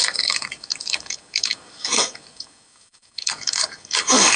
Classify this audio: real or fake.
fake